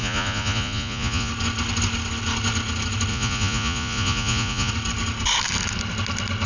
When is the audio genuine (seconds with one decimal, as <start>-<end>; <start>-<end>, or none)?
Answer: 1.3-3.1; 4.7-6.5